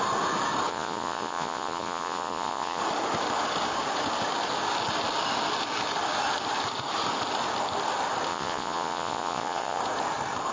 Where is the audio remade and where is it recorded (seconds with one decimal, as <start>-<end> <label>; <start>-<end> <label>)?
0.0-0.7 recorded; 0.7-2.8 remade; 2.8-8.3 recorded; 8.3-9.8 remade; 9.8-10.5 recorded